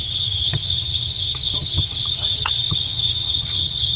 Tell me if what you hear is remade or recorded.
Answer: remade